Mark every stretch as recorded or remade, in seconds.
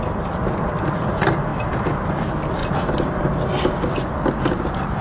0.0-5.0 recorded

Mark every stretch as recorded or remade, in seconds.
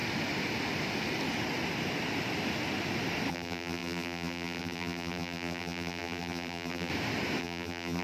0.0-3.3 recorded; 3.3-6.9 remade; 6.9-7.4 recorded; 7.4-8.0 remade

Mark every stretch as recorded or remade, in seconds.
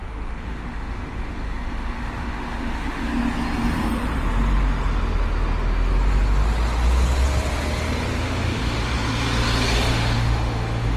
0.0-3.1 remade; 3.1-8.2 recorded; 8.2-8.8 remade; 8.8-9.9 recorded; 9.9-11.0 remade